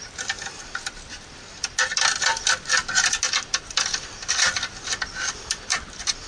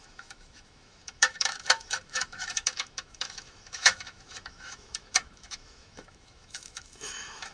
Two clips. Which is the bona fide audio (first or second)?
first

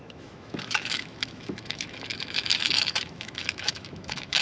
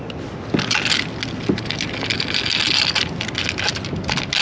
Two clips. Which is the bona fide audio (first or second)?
second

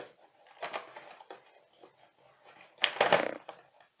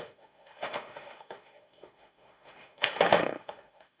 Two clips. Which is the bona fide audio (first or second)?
first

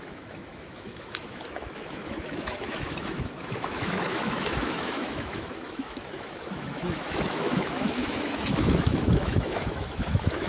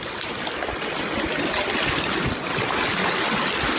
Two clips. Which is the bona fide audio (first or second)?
second